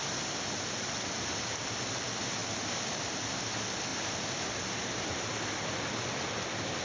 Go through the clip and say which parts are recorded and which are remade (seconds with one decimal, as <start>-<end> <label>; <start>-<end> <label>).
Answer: 0.0-6.8 recorded